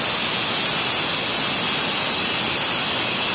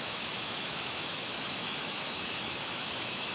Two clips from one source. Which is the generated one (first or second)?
second